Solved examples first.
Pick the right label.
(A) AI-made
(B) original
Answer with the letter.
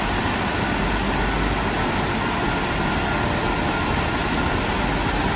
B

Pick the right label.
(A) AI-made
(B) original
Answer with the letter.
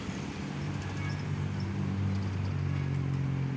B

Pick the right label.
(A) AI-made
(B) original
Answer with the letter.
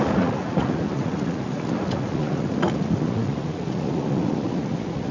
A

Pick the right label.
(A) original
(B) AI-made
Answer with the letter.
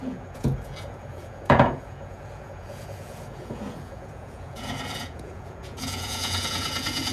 B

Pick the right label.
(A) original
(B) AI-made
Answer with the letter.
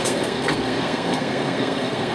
B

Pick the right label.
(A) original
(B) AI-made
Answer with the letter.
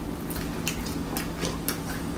A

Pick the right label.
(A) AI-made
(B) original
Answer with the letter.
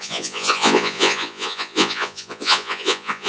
A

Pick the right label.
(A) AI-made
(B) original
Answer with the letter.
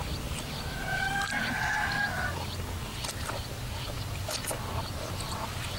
B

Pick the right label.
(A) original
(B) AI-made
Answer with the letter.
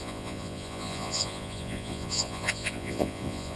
B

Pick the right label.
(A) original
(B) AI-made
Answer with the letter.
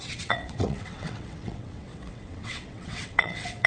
B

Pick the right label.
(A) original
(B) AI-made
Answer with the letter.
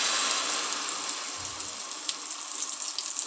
A